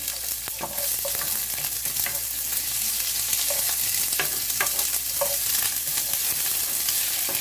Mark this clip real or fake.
real